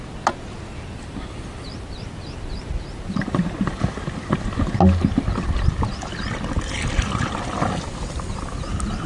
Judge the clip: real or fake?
real